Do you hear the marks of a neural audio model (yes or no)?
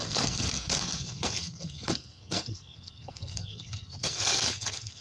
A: yes